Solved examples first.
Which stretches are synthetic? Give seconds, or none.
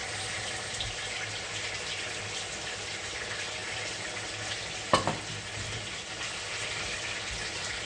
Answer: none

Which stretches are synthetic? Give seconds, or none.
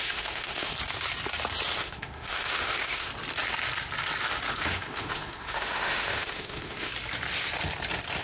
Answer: 0.0-0.7 (autoencoder, DAC-VAE); 1.8-3.1; 4.5-6.9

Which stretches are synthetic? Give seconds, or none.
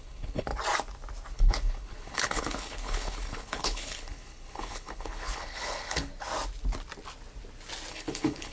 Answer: 0.0-0.5 (codec, HILCodec); 1.3-6.1; 7.9-8.5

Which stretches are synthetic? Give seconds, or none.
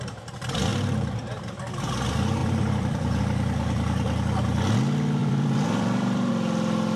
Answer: 0.7-1.3 (vocoder, BigVGAN v2); 2.4-3.2; 5.2-6.3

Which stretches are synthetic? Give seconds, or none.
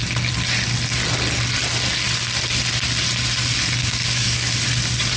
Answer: 3.8-4.5 (codec, DAC)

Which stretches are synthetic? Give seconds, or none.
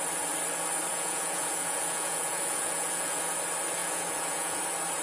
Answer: 0.9-3.2 (vocoder, Vocos); 3.8-4.6